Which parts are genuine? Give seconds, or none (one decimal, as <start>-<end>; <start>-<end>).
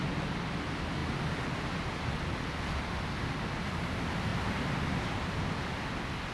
0.0-6.3